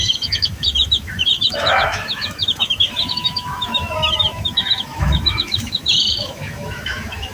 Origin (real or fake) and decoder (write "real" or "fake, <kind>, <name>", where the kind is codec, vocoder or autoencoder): fake, autoencoder, DAC-VAE